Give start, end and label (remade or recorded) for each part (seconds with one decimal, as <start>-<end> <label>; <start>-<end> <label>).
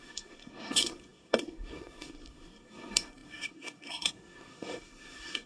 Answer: 0.0-5.5 remade